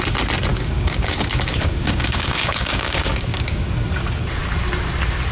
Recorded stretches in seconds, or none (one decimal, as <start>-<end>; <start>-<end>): 0.0-0.5; 3.7-5.3